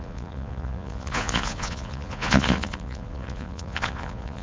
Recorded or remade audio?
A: remade